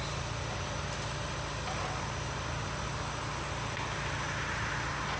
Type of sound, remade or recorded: recorded